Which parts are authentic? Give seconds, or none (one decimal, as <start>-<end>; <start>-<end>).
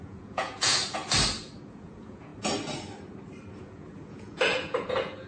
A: 1.0-1.7; 2.3-3.5